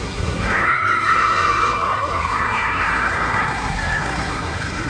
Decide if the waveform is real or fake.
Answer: fake